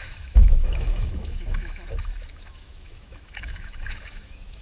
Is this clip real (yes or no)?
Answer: no